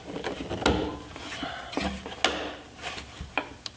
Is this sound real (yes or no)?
yes